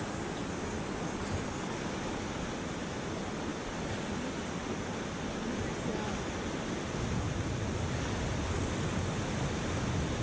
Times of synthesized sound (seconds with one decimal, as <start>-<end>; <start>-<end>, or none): none